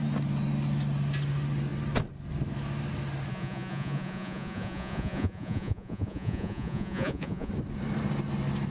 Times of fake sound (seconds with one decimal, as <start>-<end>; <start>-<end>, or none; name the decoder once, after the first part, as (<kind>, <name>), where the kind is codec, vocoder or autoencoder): 3.3-7.5 (vocoder, Vocos)